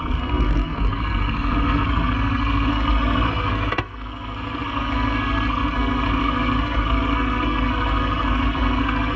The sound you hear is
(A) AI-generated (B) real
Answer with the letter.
A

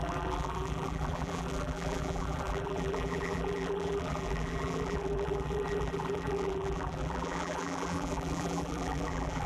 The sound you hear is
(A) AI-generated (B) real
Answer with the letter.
A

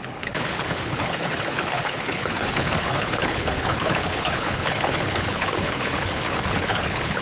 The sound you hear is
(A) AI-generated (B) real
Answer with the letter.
A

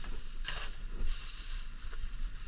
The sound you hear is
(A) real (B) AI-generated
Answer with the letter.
B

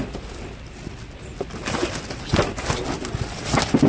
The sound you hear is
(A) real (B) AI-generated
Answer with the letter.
A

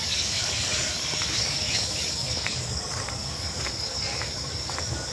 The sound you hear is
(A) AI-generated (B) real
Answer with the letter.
A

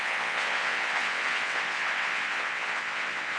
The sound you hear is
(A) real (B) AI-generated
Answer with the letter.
B